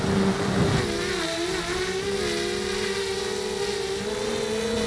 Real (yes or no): yes